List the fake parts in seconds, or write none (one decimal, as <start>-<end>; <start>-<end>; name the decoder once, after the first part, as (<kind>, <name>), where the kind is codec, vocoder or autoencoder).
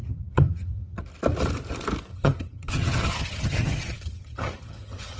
0.0-1.0 (vocoder, HiFi-GAN); 2.1-5.2